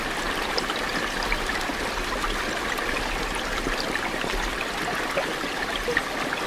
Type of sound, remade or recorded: recorded